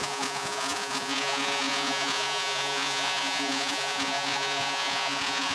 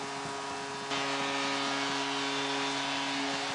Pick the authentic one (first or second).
second